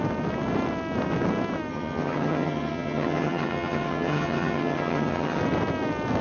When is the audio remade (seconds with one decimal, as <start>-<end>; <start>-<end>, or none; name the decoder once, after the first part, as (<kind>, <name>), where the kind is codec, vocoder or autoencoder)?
1.7-5.4 (vocoder, HiFi-GAN)